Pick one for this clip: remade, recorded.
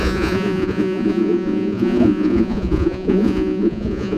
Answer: remade